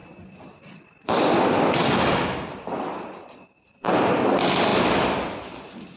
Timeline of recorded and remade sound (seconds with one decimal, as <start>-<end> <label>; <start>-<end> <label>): 0.0-6.0 recorded